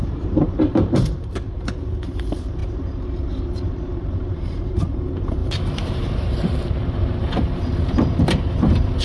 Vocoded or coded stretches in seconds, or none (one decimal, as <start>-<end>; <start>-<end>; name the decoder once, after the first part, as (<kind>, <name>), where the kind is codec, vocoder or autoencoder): 0.0-9.0 (vocoder, BigVGAN v2)